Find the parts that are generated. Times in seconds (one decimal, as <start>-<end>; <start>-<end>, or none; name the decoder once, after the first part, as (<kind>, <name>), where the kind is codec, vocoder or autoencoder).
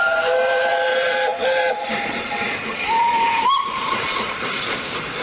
0.0-5.2 (vocoder, BigVGAN v2)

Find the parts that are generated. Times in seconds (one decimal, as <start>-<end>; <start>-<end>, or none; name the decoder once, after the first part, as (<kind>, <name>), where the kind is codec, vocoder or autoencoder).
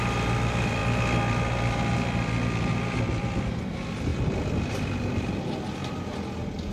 0.0-0.8 (vocoder, BigVGAN v2); 1.3-4.1; 4.7-5.8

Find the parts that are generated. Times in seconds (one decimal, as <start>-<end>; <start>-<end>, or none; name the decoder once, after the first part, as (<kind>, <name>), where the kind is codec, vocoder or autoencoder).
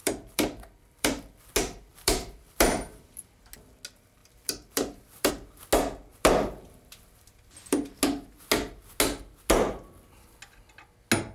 0.0-1.4 (vocoder, BigVGAN v2); 1.9-3.4; 4.2-5.3; 6.1-7.8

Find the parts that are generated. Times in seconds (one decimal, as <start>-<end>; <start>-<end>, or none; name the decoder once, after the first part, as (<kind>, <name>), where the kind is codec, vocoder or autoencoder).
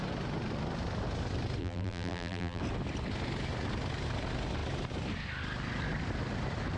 1.6-2.6 (vocoder, BigVGAN v2)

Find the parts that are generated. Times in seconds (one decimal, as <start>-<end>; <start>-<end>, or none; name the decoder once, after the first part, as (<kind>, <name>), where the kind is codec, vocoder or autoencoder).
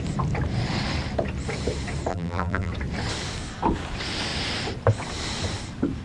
2.1-2.7 (vocoder, BigVGAN v2)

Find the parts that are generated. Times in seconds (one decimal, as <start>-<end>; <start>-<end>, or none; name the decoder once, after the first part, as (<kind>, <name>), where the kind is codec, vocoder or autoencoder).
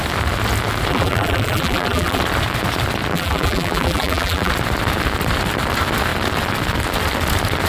0.9-2.2 (vocoder, BigVGAN v2); 3.1-4.5